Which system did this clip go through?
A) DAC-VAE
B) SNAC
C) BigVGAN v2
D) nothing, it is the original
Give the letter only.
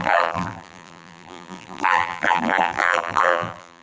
C